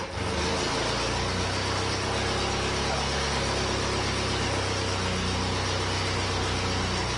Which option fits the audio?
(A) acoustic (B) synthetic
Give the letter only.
A